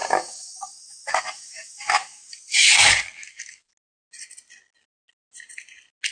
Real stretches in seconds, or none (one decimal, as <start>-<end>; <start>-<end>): 3.7-6.1